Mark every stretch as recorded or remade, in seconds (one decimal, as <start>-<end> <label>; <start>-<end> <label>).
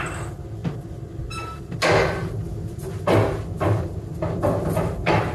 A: 0.0-5.3 recorded